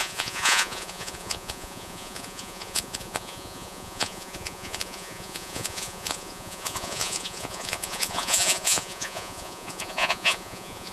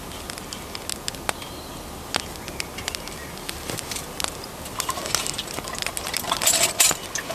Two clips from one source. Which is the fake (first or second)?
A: first